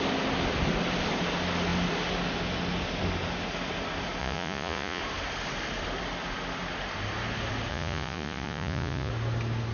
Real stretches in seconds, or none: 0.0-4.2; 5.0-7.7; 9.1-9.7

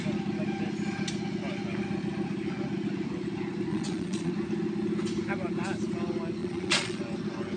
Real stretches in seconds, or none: 0.0-3.7; 4.3-6.4; 7.0-7.6